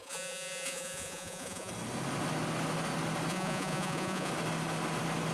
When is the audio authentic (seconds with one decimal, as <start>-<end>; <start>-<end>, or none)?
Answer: 1.7-3.3; 4.3-5.3